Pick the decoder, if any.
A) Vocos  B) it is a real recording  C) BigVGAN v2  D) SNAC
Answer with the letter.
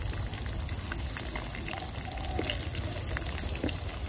B